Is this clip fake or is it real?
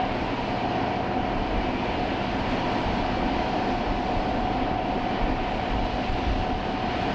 real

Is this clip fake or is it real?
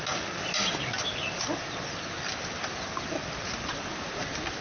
real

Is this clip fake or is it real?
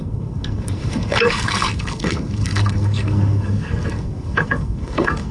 fake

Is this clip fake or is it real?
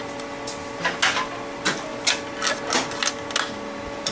real